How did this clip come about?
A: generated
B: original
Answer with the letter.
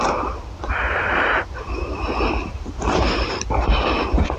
A